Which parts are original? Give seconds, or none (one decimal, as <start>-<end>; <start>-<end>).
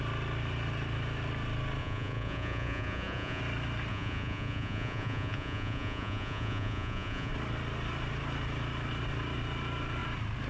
0.0-1.8; 3.4-3.9; 7.3-10.5